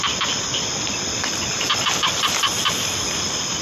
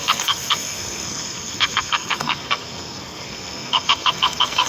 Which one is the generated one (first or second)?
second